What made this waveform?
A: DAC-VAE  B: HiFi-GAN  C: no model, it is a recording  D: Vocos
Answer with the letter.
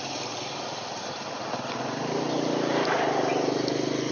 C